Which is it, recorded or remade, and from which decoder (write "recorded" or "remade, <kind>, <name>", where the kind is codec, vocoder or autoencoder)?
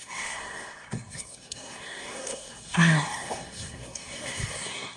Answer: remade, codec, SNAC